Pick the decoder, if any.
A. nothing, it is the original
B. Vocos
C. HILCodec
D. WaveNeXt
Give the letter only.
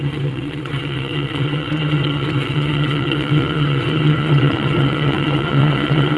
D